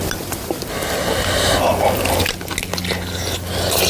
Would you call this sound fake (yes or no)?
no